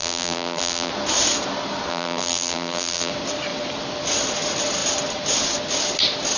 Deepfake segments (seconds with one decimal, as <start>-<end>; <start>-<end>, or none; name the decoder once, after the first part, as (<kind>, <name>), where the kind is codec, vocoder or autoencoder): 0.0-0.9 (vocoder, BigVGAN v2); 1.9-3.1